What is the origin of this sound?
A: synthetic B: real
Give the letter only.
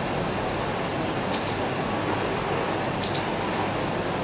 B